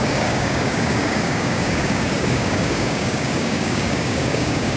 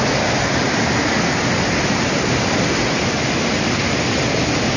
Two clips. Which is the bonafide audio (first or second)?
second